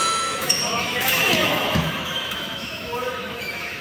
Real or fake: fake